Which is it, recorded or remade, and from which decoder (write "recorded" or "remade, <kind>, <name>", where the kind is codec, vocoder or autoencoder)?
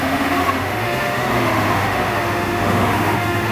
remade, autoencoder, DAC-VAE